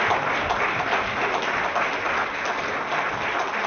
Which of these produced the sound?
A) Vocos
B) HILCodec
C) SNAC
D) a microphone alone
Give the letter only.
D